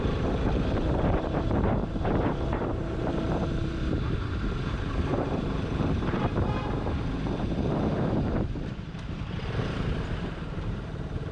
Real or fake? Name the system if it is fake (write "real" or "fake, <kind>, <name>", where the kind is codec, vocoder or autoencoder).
fake, vocoder, BigVGAN v2